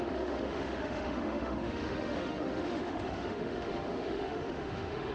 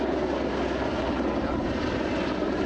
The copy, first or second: first